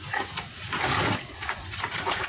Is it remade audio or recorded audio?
remade